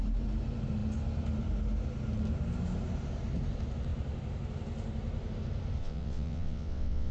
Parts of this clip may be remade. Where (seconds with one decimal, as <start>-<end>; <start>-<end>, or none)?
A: 5.8-7.1